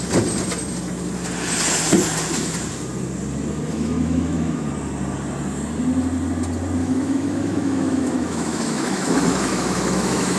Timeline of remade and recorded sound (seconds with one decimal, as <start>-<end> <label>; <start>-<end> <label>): 0.0-3.7 recorded; 3.7-4.7 remade; 4.7-6.8 recorded; 6.8-10.4 remade